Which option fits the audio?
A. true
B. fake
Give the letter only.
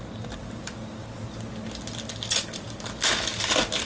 A